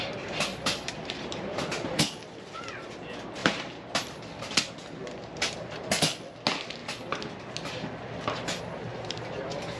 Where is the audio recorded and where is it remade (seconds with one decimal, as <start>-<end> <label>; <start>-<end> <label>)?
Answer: 0.0-0.5 recorded; 0.5-2.0 remade; 2.0-3.4 recorded; 3.4-4.2 remade; 4.2-9.8 recorded